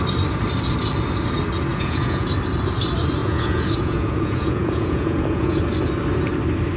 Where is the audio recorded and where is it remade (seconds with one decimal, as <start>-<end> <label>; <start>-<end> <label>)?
0.0-1.7 recorded; 1.7-2.3 remade; 2.3-3.2 recorded; 3.2-5.6 remade; 5.6-6.8 recorded